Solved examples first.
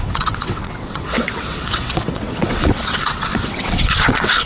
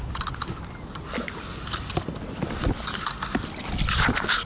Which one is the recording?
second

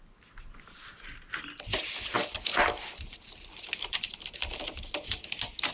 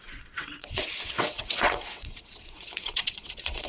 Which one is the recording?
first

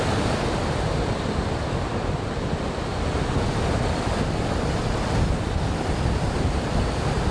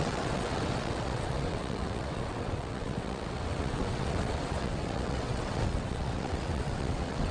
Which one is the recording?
first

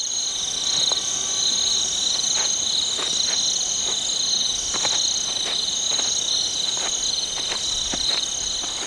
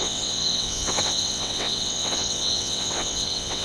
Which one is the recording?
first